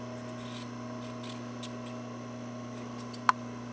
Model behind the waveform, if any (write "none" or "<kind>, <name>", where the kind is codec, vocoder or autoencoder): none